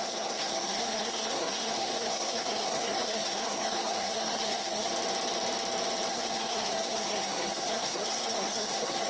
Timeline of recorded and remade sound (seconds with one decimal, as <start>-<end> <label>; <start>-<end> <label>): 0.0-4.9 remade; 4.9-6.1 recorded; 6.1-9.1 remade

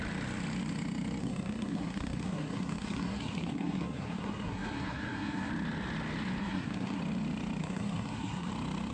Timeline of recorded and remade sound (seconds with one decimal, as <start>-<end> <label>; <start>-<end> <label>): 0.0-1.2 recorded; 1.2-5.5 remade; 5.5-6.4 recorded; 6.4-7.0 remade; 7.0-7.6 recorded; 7.6-8.5 remade; 8.5-8.9 recorded

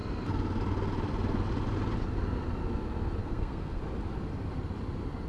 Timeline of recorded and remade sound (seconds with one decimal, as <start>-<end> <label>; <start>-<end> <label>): 0.0-3.2 recorded; 3.2-3.8 remade; 3.8-5.3 recorded

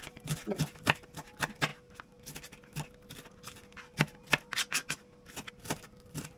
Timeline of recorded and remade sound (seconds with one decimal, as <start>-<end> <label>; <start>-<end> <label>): 0.0-6.4 recorded

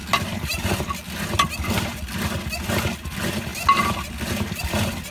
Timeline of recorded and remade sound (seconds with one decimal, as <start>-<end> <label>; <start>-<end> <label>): 0.0-5.1 recorded